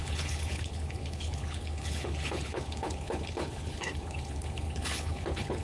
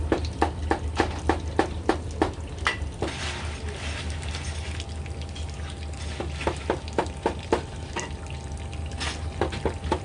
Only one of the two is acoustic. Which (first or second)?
second